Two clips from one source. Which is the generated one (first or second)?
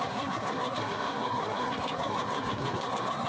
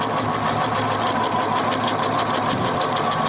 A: first